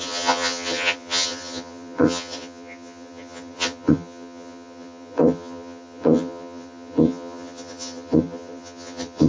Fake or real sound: fake